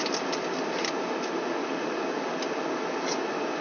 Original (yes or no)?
yes